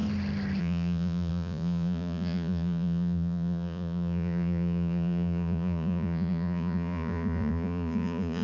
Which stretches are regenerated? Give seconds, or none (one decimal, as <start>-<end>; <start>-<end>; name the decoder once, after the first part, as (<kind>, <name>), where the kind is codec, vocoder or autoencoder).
0.6-8.4 (vocoder, Vocos)